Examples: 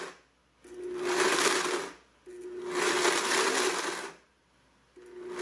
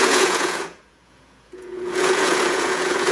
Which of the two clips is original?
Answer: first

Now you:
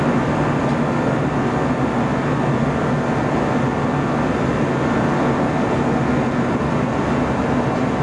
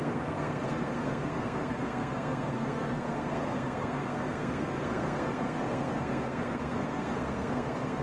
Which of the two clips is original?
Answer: first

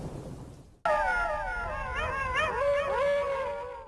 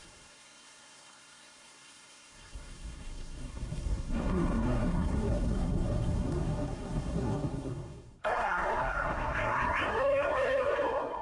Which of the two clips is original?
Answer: first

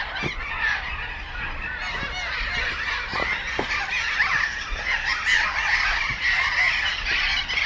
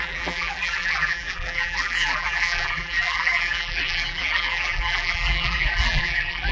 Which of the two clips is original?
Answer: first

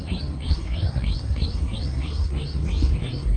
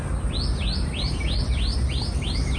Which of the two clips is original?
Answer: second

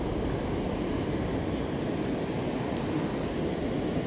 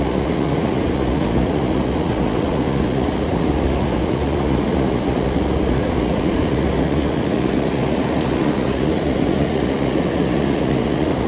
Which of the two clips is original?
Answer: first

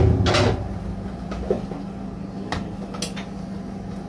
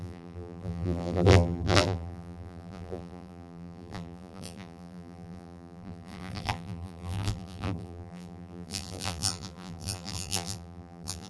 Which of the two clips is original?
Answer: first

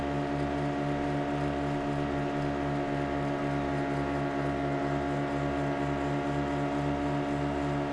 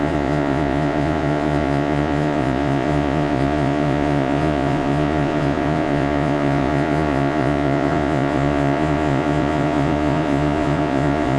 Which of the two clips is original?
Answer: first